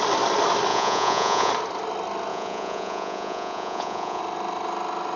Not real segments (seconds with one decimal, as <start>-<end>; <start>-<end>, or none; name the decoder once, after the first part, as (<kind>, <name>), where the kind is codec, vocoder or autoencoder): 0.7-1.5 (vocoder, Vocos); 2.3-4.2